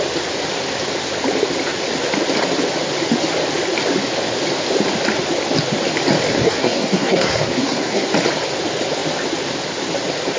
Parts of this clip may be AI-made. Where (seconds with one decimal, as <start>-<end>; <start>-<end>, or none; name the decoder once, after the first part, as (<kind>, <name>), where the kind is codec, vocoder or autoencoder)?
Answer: 6.3-8.1 (codec, SNAC)